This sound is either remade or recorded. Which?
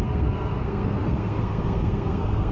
remade